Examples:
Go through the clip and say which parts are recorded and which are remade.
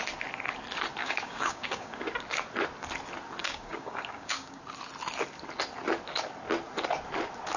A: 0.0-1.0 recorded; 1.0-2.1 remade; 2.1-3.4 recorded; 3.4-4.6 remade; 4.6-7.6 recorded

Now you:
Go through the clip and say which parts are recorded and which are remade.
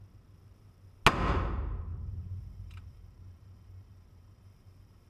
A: 0.0-1.9 recorded; 1.9-5.1 remade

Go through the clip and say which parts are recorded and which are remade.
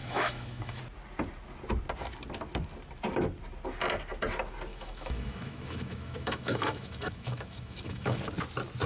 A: 0.0-0.8 remade; 0.8-4.7 recorded; 4.7-8.2 remade; 8.2-8.9 recorded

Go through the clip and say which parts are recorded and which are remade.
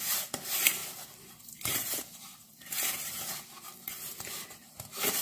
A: 0.0-5.2 recorded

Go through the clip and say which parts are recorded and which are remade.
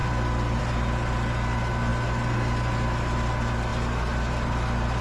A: 0.0-5.0 recorded